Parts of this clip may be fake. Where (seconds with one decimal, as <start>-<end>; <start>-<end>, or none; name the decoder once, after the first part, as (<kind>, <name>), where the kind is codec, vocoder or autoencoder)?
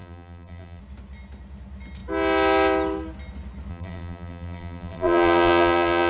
0.0-0.8 (vocoder, BigVGAN v2); 3.7-6.1